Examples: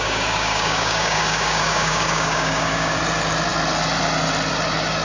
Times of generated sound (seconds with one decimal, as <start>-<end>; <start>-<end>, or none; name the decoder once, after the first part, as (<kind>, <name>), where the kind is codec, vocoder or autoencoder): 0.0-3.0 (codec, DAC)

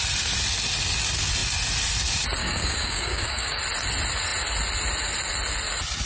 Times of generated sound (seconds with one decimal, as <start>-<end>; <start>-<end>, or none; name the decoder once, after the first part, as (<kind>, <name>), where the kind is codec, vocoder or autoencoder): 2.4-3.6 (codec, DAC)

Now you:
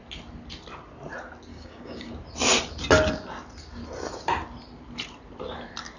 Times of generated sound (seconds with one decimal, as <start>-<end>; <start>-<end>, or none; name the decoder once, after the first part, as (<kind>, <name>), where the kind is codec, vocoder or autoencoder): 1.5-2.1 (codec, DAC)

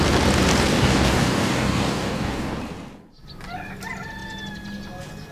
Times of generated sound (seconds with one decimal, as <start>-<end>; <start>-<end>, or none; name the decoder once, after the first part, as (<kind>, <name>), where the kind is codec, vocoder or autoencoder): 0.7-2.6 (codec, DAC)

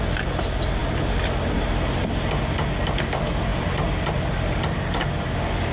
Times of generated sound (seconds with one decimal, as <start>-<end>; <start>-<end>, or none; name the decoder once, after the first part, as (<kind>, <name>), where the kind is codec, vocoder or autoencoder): none

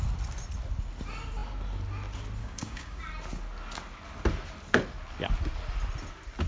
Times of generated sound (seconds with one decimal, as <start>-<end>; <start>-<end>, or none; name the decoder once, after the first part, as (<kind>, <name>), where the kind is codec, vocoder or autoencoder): 2.4-3.0 (codec, DAC)

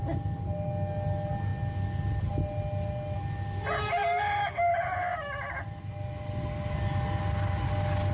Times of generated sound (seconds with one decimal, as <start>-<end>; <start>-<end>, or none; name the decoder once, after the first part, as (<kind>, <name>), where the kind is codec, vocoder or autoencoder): none

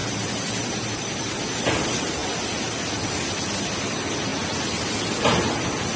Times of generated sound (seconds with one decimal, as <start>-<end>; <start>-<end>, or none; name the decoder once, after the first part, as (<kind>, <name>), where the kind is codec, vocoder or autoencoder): none